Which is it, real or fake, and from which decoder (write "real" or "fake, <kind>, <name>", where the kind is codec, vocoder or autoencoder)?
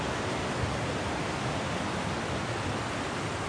real